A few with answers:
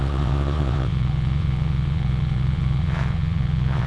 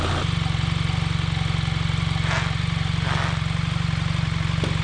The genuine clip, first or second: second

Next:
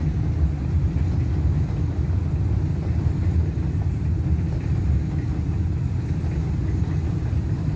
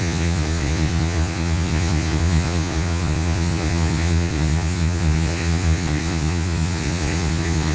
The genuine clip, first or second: first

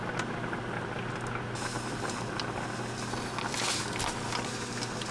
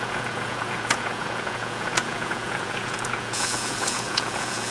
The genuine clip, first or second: first